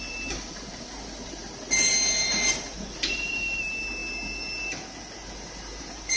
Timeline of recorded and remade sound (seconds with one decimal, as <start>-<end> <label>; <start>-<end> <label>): 0.0-6.2 recorded